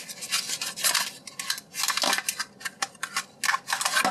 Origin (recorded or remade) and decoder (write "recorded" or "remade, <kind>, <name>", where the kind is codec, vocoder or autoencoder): recorded